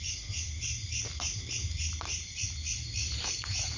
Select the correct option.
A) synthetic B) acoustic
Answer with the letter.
A